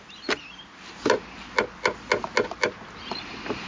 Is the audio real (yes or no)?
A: yes